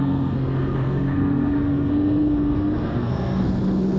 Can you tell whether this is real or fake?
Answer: fake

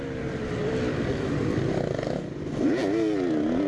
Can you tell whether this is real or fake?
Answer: real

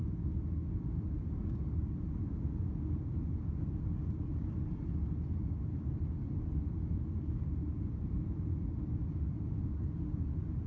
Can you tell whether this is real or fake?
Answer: real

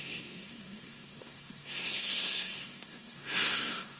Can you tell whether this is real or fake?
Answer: fake